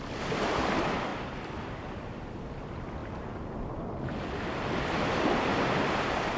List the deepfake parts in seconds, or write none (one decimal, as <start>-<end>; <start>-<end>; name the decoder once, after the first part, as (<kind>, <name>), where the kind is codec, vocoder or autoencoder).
1.1-2.4 (vocoder, BigVGAN v2)